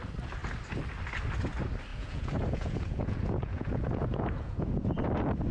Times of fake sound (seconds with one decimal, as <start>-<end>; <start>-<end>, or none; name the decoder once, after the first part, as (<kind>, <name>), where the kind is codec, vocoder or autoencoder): 1.9-5.1 (vocoder, Vocos)